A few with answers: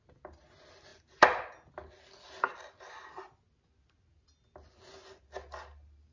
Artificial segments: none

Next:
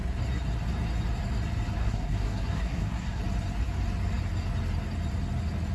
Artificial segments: 1.8-3.2 (codec, SNAC)

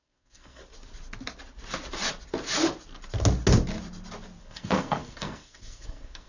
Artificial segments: 0.0-0.6 (codec, SNAC); 4.4-6.3

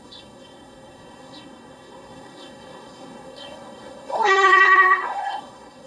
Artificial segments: 0.0-5.9 (codec, SNAC)

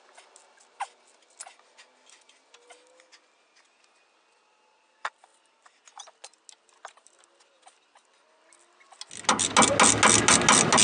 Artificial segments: none

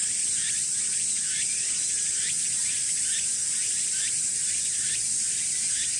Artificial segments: none